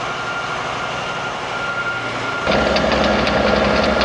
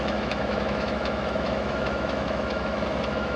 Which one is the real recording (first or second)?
first